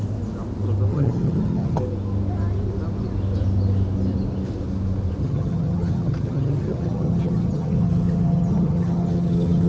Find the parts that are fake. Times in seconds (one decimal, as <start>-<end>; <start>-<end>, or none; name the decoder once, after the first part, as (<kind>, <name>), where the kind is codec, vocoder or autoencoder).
0.9-1.8 (vocoder, HiFi-GAN); 5.2-9.7